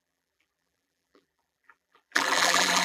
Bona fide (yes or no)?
no